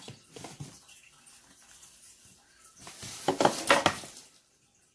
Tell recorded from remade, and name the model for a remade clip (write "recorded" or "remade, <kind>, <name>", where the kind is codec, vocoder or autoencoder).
recorded